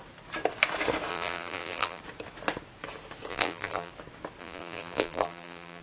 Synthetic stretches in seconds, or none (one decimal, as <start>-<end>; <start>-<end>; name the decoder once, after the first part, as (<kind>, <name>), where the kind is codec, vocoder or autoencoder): 1.1-2.0 (vocoder, BigVGAN v2); 3.3-3.9; 4.4-5.8